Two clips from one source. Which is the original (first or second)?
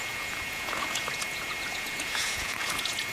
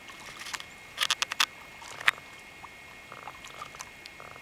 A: second